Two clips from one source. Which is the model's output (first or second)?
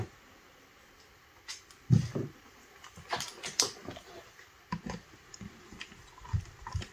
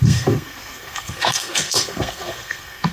second